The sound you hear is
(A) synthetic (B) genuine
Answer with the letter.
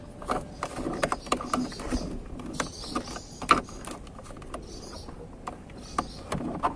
B